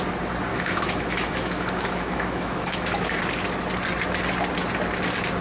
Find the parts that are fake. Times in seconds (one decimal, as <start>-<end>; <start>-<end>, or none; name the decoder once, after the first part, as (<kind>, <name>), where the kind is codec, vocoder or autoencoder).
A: 0.5-3.2 (autoencoder, DAC-VAE)

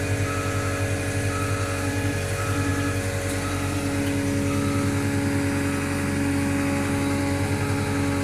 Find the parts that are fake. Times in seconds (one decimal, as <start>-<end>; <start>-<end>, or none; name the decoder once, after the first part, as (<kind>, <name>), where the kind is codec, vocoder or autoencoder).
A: none

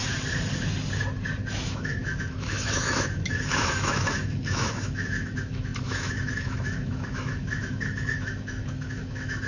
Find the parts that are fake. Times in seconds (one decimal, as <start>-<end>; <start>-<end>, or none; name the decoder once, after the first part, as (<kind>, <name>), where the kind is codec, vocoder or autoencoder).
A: 1.5-9.5 (autoencoder, DAC-VAE)